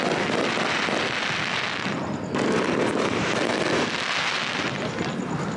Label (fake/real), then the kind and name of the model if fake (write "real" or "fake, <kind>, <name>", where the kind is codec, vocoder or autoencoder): real